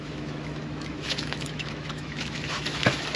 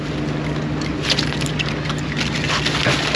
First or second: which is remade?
first